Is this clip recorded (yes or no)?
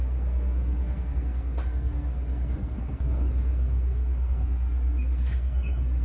no